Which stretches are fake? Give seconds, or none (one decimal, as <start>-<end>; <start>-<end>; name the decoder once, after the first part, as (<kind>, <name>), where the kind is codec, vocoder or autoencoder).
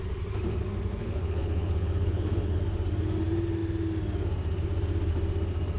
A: 1.0-2.6 (codec, HILCodec)